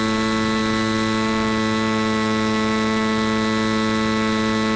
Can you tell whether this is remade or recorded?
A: recorded